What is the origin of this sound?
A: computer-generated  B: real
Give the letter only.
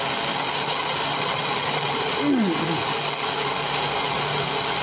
B